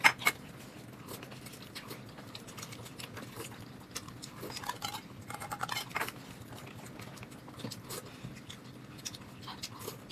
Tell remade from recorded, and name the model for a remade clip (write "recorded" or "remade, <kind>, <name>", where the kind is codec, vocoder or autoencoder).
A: recorded